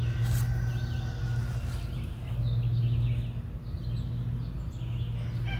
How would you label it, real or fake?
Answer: real